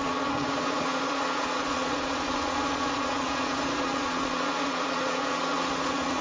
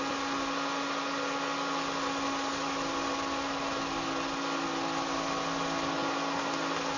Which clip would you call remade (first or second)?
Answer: first